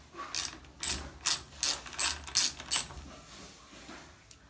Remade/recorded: recorded